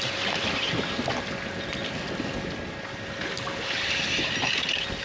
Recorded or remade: recorded